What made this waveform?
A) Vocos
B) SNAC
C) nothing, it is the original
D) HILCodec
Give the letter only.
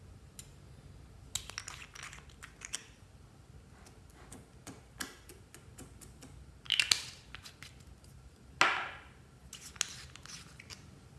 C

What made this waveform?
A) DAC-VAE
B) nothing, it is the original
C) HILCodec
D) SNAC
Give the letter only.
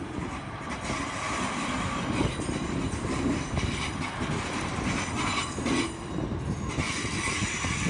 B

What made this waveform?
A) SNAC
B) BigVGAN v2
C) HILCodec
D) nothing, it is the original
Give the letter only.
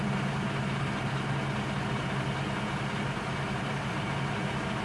D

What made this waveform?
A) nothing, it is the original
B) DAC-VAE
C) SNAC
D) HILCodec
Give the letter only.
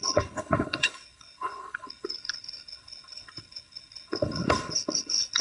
D